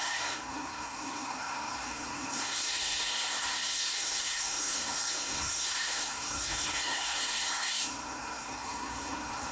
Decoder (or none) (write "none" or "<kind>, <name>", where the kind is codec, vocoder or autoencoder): codec, SNAC